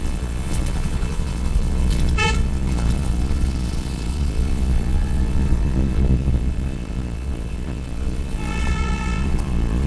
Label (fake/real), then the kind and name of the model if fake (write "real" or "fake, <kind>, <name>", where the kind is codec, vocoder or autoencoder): fake, vocoder, Vocos